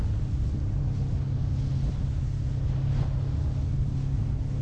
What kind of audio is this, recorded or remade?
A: recorded